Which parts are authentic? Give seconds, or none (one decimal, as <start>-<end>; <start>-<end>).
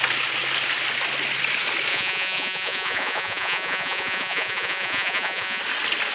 0.0-1.9; 5.6-6.1